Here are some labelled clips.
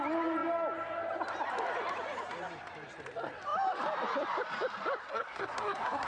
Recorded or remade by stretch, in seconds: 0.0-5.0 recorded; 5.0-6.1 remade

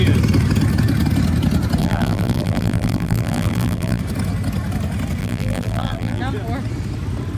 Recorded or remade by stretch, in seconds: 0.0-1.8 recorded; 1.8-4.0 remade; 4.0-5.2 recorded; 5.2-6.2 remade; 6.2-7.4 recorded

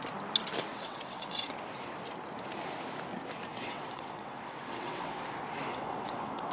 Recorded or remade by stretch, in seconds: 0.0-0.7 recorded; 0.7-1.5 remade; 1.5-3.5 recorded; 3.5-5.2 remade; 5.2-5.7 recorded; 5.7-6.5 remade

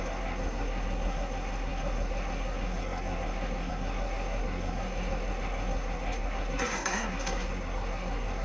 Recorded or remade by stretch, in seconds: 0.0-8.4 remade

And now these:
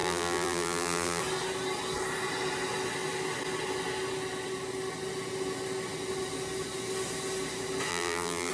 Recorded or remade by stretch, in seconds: 0.0-1.2 remade; 1.2-7.9 recorded; 7.9-8.5 remade